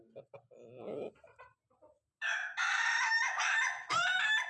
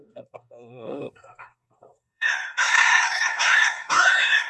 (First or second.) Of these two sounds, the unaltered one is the first